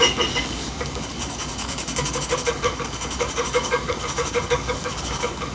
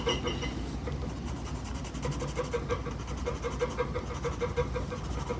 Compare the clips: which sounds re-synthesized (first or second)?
first